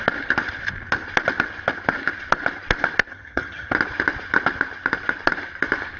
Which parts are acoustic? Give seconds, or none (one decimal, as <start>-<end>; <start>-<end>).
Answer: 0.0-3.1; 3.7-6.0